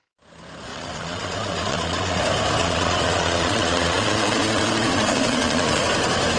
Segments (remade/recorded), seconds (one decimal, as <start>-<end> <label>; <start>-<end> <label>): 0.0-0.7 recorded; 0.7-2.2 remade; 2.2-2.6 recorded; 2.6-5.8 remade; 5.8-6.4 recorded